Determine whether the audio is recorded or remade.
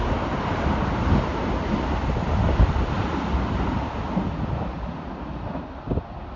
recorded